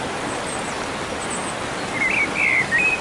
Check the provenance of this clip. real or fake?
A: real